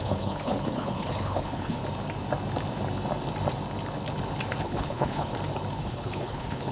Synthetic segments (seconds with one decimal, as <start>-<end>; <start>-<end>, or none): 0.0-1.8; 4.6-5.3; 5.8-6.7